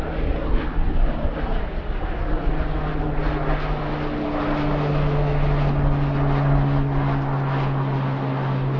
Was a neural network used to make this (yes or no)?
no